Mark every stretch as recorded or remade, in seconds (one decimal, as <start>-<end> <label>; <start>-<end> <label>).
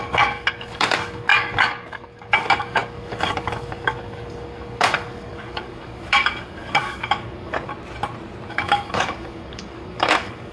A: 0.0-7.7 remade; 7.7-8.5 recorded; 8.5-10.5 remade